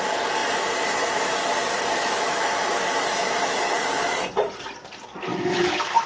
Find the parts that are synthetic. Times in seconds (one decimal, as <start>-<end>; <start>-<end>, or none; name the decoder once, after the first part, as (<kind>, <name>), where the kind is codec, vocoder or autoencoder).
2.0-4.3 (autoencoder, DAC-VAE); 5.3-6.1